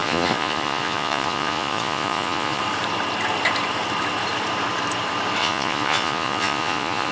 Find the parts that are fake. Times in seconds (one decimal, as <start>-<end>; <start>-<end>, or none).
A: 0.0-2.6; 5.4-7.1